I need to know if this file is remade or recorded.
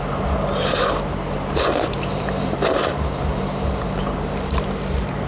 remade